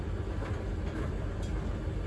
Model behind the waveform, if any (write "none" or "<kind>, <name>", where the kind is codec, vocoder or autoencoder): none